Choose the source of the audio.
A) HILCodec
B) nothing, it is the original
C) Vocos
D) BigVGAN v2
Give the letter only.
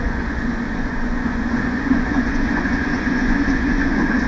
C